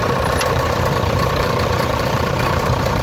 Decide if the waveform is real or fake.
fake